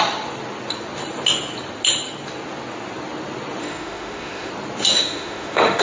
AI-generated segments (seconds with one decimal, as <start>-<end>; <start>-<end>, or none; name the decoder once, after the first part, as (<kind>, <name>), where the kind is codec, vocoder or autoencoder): 3.6-4.5 (autoencoder, DAC-VAE); 4.9-5.8